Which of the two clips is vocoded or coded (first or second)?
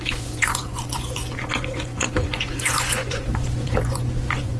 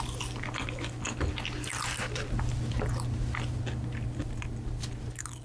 first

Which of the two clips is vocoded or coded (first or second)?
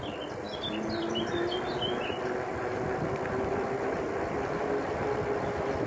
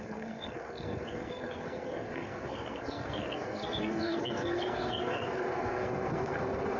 second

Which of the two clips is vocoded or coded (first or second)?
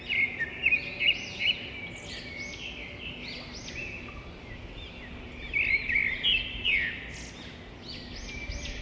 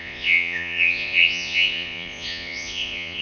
second